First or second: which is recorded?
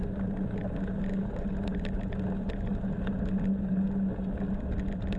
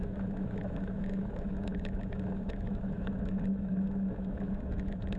first